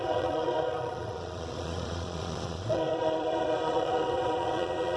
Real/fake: fake